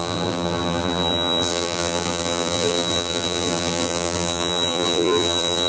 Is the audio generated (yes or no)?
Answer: yes